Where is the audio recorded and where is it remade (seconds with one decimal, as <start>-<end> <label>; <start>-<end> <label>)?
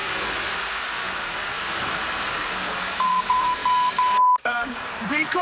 0.0-3.1 recorded; 3.1-5.4 remade